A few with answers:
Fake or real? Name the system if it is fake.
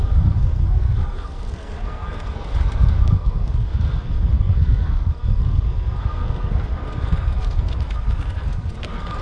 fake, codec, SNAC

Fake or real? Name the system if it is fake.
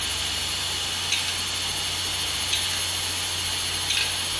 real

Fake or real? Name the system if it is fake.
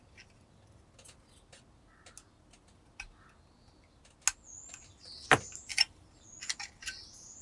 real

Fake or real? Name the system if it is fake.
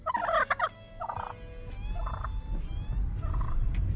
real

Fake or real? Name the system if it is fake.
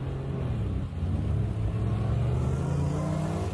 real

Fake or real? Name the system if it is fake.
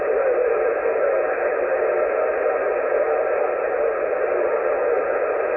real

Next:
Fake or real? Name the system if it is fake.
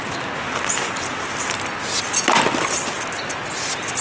real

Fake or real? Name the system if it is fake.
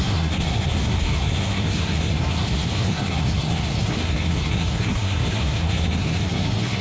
fake, codec, SNAC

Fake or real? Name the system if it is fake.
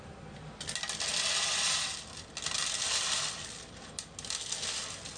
real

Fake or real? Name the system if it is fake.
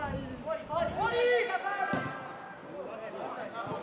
real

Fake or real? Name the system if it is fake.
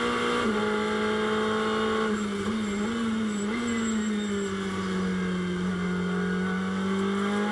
real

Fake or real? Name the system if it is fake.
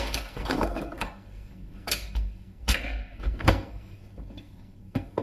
fake, codec, SNAC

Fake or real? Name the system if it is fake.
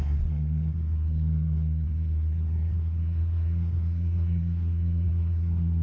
fake, codec, SNAC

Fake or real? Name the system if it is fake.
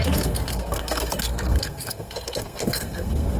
fake, codec, SNAC